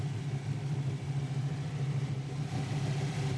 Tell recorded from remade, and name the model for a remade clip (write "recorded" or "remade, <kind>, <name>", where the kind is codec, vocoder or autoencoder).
remade, vocoder, BigVGAN v2